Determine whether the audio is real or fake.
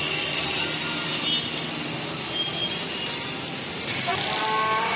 real